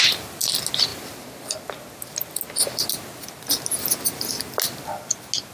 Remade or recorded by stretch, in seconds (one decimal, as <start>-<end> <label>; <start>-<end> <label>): 0.0-5.5 recorded